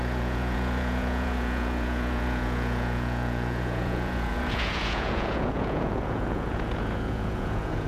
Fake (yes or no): yes